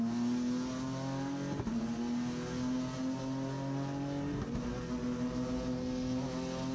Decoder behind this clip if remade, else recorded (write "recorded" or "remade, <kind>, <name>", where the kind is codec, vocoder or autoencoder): recorded